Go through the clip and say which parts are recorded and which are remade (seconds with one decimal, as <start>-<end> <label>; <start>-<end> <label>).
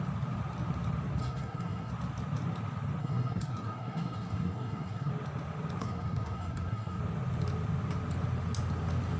0.0-1.2 recorded; 1.2-1.9 remade; 1.9-3.0 recorded; 3.0-5.1 remade; 5.1-5.8 recorded; 5.8-7.0 remade; 7.0-9.2 recorded